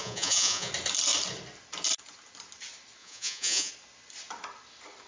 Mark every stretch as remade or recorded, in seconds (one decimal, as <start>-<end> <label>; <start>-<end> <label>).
0.0-0.7 remade; 0.7-3.0 recorded; 3.0-3.7 remade; 3.7-5.1 recorded